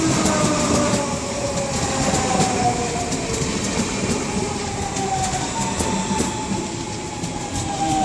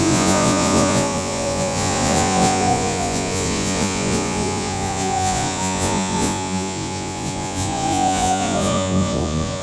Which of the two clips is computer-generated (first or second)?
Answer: second